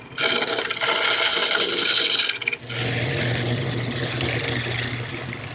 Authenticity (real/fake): real